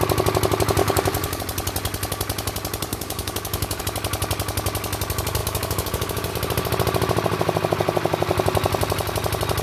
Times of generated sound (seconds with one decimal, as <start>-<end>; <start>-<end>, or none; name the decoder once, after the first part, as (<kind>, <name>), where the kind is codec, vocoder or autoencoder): 0.8-1.4 (codec, DAC); 2.9-3.8; 5.4-6.3